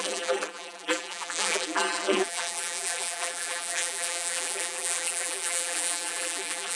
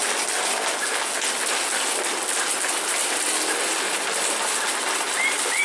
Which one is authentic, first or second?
second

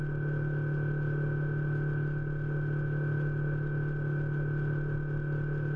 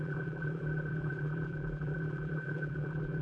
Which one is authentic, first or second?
first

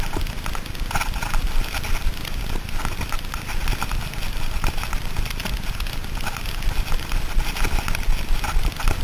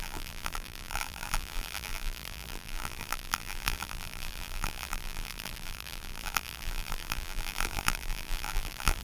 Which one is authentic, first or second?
first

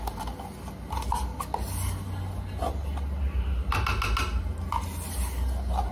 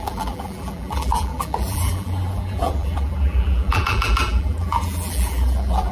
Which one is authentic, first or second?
first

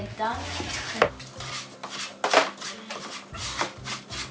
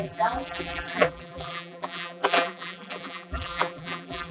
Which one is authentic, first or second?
first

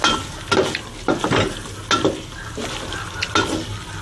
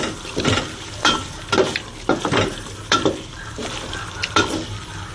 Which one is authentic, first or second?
first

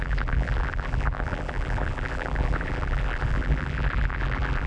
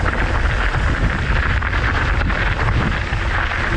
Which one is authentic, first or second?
second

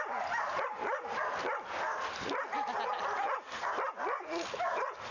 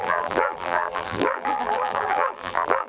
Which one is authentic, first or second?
first